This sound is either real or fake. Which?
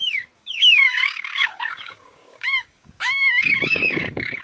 fake